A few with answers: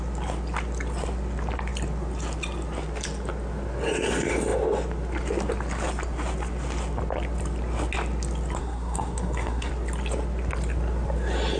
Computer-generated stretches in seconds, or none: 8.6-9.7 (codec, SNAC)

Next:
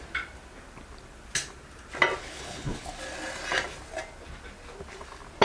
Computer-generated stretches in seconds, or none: 2.2-2.9 (codec, HILCodec)

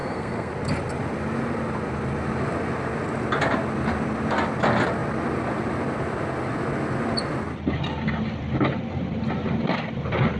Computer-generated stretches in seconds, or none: 0.0-0.5 (codec, SNAC)

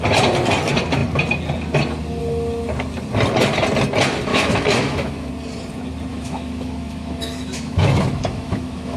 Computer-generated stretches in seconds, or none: 4.3-5.3 (autoencoder, DAC-VAE); 6.1-9.0

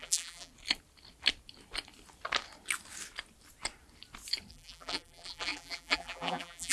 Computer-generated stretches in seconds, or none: 0.0-0.5 (vocoder, BigVGAN v2); 4.5-6.7

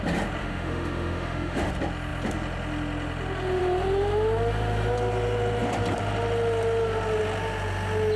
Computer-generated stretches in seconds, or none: 0.4-1.7 (autoencoder, DAC-VAE)